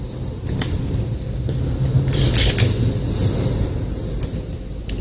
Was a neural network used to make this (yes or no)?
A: no